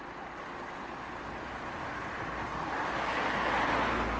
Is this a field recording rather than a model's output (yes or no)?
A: yes